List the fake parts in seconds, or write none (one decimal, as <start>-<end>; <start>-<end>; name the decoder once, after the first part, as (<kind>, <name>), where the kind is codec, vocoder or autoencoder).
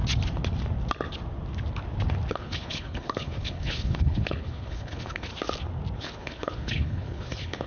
2.3-5.3 (codec, HILCodec); 6.0-7.7